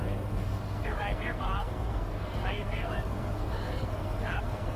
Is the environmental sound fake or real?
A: fake